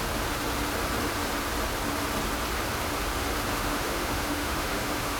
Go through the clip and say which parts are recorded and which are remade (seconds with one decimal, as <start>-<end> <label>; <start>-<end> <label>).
0.0-3.5 recorded; 3.5-5.2 remade